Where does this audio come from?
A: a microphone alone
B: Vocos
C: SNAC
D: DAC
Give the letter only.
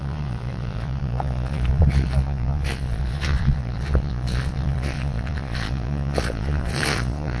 B